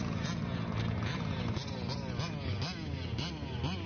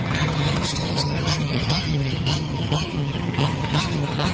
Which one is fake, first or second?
second